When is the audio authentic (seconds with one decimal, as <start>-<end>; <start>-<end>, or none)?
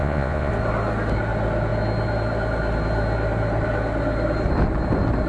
0.5-5.3